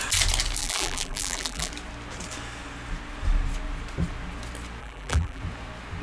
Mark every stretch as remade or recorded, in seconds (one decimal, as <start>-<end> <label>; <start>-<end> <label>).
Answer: 0.0-0.6 recorded; 0.6-1.7 remade; 1.7-4.8 recorded; 4.8-5.4 remade; 5.4-6.0 recorded